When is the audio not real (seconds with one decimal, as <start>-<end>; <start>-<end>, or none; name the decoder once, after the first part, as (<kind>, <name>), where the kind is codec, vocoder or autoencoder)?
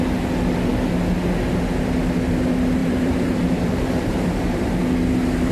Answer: 2.8-4.8 (vocoder, BigVGAN v2)